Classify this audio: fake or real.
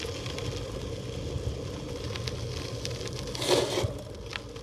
real